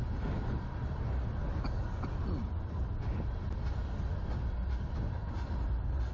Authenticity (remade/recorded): recorded